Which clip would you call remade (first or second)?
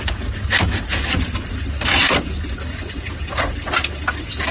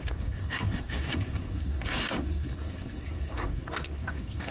second